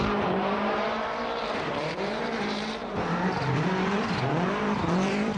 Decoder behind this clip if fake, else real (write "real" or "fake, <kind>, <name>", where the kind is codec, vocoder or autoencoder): fake, vocoder, BigVGAN v2